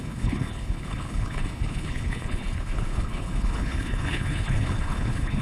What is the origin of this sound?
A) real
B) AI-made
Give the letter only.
B